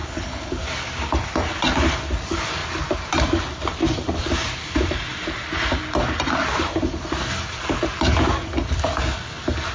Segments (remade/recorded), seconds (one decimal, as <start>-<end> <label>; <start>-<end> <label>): 0.0-0.5 remade; 0.5-9.7 recorded